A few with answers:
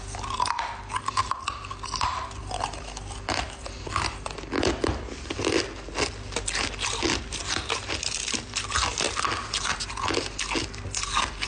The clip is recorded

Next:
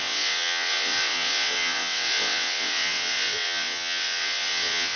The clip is remade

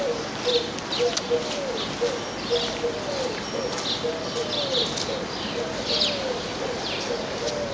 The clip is recorded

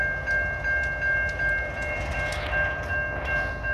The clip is recorded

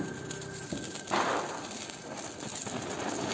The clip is recorded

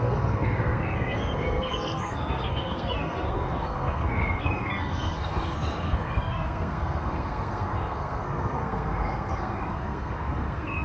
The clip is remade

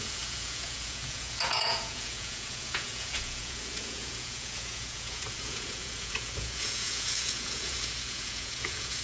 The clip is remade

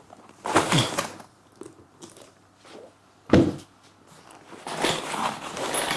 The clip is recorded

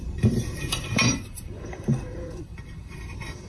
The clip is remade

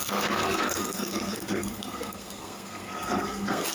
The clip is remade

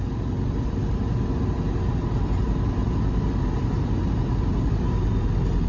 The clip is recorded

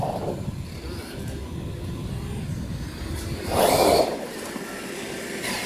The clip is recorded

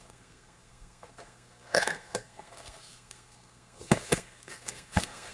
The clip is remade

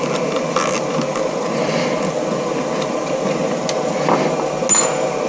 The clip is recorded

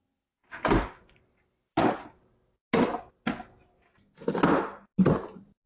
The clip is recorded